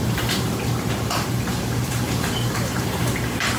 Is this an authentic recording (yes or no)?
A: no